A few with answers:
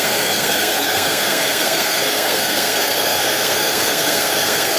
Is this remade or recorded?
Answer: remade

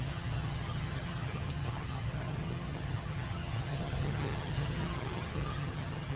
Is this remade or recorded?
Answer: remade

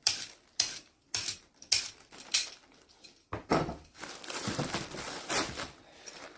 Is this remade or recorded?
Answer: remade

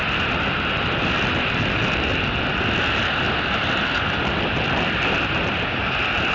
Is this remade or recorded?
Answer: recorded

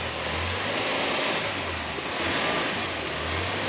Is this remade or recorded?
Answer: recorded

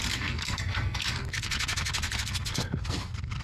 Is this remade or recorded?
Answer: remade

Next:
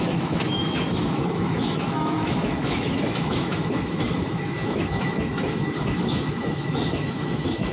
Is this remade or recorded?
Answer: remade